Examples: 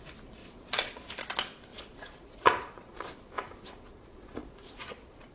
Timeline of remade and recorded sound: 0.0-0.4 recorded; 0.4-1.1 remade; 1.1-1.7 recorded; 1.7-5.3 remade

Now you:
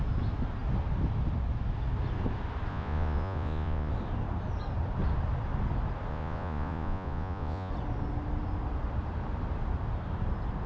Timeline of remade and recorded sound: 0.0-2.7 recorded; 2.7-3.9 remade; 3.9-6.1 recorded; 6.1-7.7 remade; 7.7-10.7 recorded

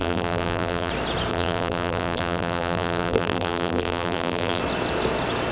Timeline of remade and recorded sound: 0.0-0.9 remade; 0.9-1.3 recorded; 1.3-4.6 remade; 4.6-5.5 recorded

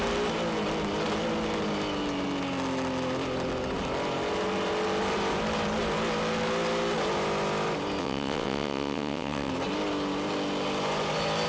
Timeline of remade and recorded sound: 0.0-8.0 recorded; 8.0-9.5 remade; 9.5-11.5 recorded

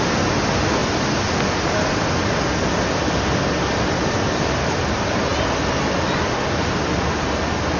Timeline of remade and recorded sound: 0.0-5.3 recorded; 5.3-6.1 remade; 6.1-7.8 recorded

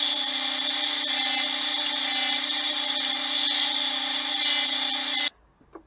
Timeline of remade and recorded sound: 0.0-5.9 recorded

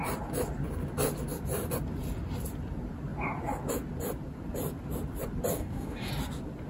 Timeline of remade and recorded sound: 0.0-5.5 recorded; 5.5-6.1 remade; 6.1-6.7 recorded

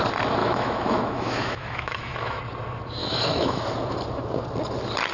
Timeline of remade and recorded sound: 0.0-0.4 recorded; 0.4-2.4 remade; 2.4-3.0 recorded; 3.0-3.6 remade; 3.6-5.1 recorded